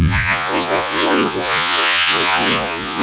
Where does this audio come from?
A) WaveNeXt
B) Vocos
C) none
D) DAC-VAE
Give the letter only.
B